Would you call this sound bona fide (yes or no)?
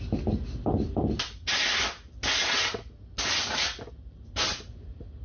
yes